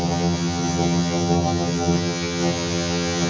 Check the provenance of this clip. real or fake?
fake